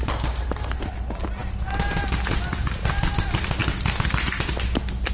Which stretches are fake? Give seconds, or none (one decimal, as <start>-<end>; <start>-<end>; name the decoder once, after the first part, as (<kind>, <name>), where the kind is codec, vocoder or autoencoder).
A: none

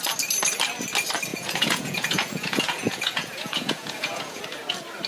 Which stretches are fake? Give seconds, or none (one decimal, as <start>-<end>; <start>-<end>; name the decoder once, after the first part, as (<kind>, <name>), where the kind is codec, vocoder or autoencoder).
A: 1.3-4.4 (vocoder, Vocos)

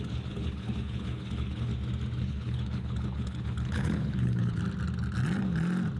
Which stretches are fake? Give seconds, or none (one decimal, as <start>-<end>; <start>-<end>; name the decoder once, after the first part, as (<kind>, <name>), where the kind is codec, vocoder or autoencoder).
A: 0.0-1.7 (codec, HILCodec); 2.2-4.6